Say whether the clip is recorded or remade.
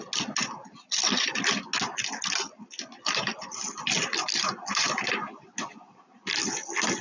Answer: recorded